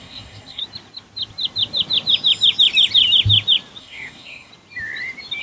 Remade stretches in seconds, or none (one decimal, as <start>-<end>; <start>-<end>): 0.0-0.6; 3.8-4.5